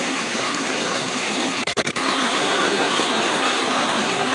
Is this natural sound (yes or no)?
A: no